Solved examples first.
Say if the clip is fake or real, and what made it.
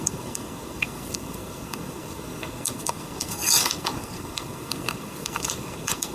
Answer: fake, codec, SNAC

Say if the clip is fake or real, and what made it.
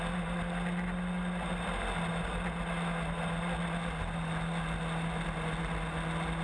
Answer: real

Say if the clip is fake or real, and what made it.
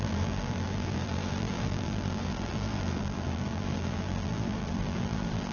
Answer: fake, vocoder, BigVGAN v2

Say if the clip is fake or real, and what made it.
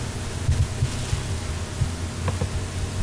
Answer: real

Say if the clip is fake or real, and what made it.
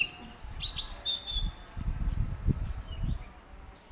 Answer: real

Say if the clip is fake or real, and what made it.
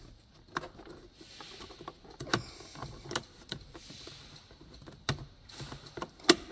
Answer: real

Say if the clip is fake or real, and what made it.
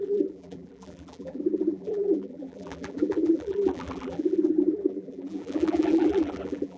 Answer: fake, vocoder, BigVGAN v2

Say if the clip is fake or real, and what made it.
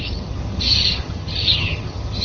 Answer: fake, vocoder, HiFi-GAN